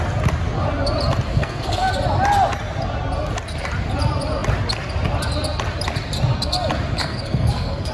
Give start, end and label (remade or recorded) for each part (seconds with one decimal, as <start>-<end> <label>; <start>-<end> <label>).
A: 0.0-1.3 recorded; 1.3-1.9 remade; 1.9-7.0 recorded; 7.0-7.9 remade